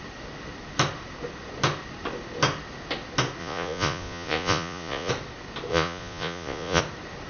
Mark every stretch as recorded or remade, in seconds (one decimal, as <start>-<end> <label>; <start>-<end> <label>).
0.0-3.4 recorded; 3.4-5.1 remade; 5.1-5.7 recorded; 5.7-6.8 remade; 6.8-7.3 recorded